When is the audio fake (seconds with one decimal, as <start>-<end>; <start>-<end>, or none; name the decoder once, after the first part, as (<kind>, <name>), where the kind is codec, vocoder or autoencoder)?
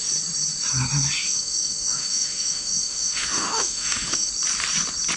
1.2-4.3 (autoencoder, DAC-VAE)